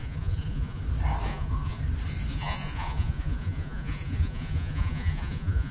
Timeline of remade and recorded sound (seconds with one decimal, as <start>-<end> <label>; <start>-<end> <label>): 0.0-0.8 remade; 0.8-1.3 recorded; 1.3-1.8 remade; 1.8-2.3 recorded; 2.3-5.7 remade